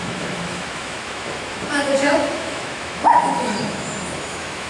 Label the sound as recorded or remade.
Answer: remade